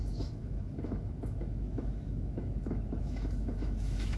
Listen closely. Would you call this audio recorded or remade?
remade